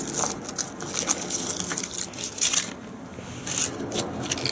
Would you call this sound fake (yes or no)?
no